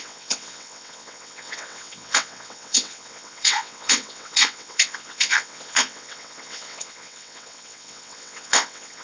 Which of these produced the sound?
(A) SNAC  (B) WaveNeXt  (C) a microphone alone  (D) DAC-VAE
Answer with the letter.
B